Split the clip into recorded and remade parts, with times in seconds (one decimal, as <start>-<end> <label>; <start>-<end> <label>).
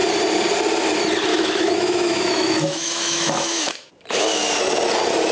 0.0-1.3 recorded; 1.3-3.9 remade; 3.9-5.3 recorded